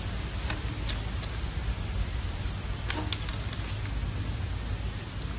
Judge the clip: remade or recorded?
recorded